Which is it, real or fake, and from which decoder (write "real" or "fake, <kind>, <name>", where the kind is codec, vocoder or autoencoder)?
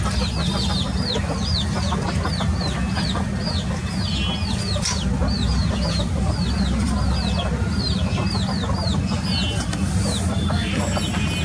fake, vocoder, BigVGAN v2